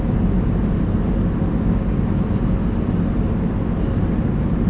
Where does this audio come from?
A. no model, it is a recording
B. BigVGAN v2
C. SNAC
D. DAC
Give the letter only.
A